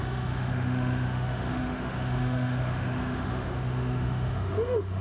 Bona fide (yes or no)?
no